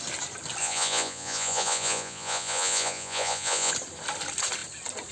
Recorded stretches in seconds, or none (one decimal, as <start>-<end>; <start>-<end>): 0.0-0.6; 3.7-5.1